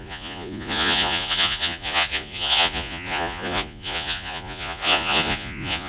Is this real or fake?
fake